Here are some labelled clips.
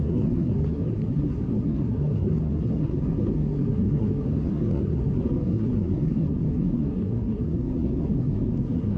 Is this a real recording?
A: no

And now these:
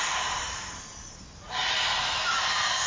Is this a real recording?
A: no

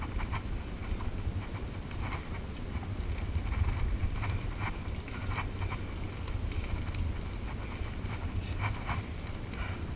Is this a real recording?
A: yes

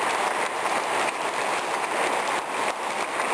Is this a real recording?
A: yes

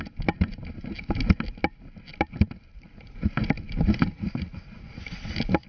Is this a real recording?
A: yes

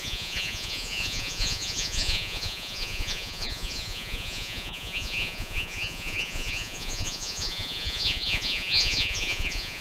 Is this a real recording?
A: no